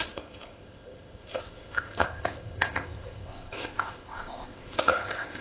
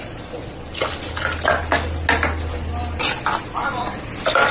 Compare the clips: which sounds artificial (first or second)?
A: first